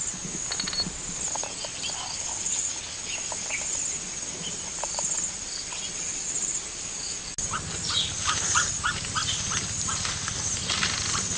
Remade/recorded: recorded